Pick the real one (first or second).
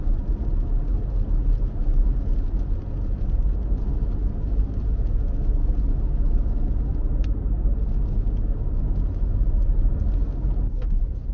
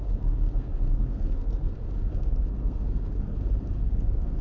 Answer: first